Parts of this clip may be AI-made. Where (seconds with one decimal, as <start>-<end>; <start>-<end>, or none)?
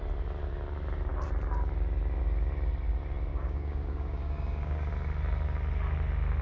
3.3-4.9